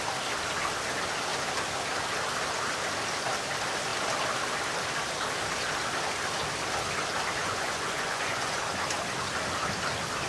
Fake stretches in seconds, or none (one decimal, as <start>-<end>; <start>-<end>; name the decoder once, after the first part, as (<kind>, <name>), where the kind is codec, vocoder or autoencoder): 7.4-8.6 (vocoder, Vocos)